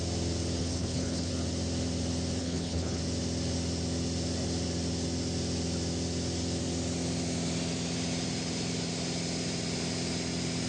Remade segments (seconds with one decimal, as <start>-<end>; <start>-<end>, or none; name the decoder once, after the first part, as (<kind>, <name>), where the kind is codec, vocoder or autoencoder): 0.6-1.3 (codec, HILCodec); 2.4-3.0